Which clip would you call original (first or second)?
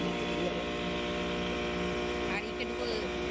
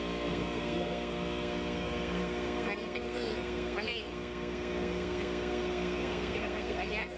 first